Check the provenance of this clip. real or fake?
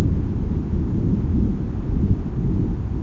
real